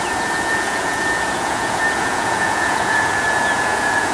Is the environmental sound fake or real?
fake